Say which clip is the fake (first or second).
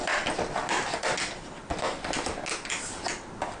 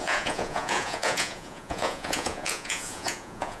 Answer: second